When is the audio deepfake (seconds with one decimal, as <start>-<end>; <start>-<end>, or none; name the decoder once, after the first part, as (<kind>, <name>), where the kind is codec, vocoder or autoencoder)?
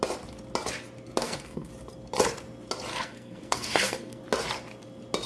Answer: 1.2-1.7 (codec, SNAC); 2.9-4.2